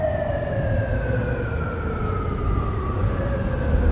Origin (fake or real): real